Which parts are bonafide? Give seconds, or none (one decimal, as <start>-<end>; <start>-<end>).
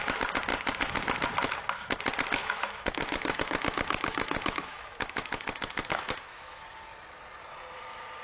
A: 0.0-2.4; 6.6-8.2